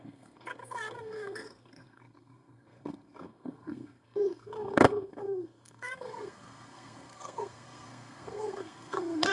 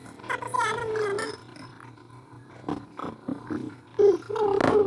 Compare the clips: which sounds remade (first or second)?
first